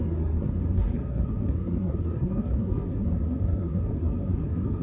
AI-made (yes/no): yes